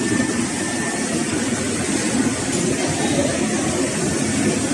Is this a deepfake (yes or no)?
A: yes